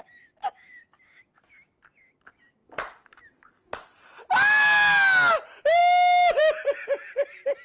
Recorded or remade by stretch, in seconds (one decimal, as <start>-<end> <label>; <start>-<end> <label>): 0.0-7.6 recorded